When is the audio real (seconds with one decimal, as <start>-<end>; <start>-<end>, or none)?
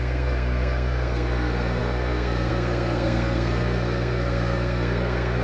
none